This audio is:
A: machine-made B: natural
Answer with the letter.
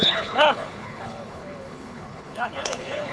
A